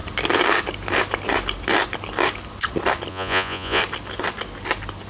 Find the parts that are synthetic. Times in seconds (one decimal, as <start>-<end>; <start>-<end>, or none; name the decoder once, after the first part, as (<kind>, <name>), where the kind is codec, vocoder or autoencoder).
3.1-3.8 (vocoder, Vocos)